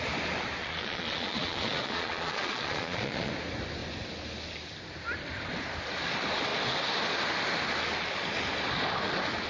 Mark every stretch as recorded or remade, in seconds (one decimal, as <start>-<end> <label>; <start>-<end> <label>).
0.0-0.6 recorded; 0.6-3.3 remade; 3.3-9.5 recorded